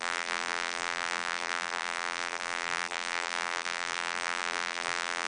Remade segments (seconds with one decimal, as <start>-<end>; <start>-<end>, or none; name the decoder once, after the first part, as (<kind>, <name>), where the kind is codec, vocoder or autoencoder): 0.0-5.3 (vocoder, BigVGAN v2)